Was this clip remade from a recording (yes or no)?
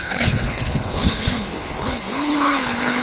yes